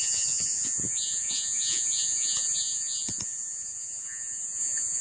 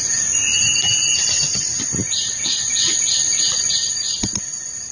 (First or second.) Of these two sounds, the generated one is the first